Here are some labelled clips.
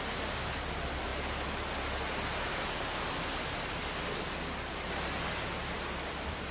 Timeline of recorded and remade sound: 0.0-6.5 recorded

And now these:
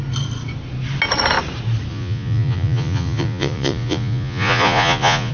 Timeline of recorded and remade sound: 0.0-1.9 recorded; 1.9-5.3 remade

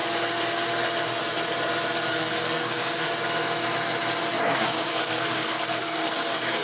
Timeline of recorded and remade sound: 0.0-2.1 recorded; 2.1-3.1 remade; 3.1-4.3 recorded; 4.3-6.6 remade

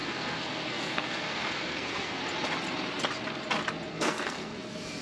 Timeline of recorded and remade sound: 0.0-2.2 remade; 2.2-3.9 recorded; 3.9-5.0 remade